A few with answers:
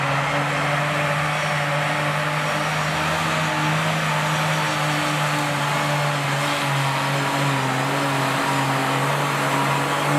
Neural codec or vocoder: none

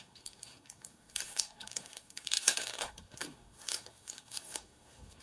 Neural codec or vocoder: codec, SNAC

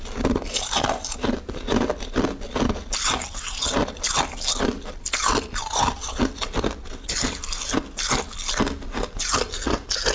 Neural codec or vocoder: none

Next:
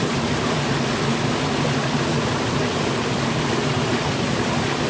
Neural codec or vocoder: none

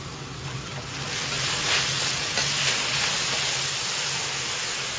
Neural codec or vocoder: none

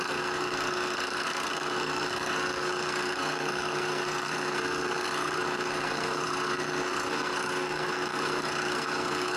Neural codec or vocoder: codec, SNAC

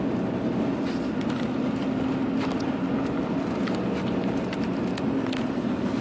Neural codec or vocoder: none